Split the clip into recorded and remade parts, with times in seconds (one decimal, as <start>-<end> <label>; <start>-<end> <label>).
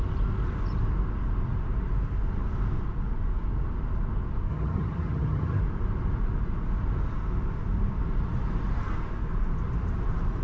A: 0.0-4.5 recorded; 4.5-5.6 remade; 5.6-10.4 recorded